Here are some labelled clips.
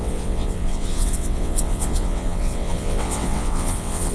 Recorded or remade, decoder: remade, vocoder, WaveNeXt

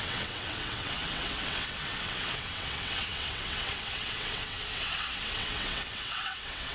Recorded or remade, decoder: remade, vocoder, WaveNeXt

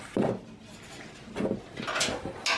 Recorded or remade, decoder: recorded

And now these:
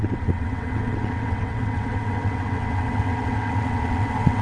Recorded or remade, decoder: remade, vocoder, WaveNeXt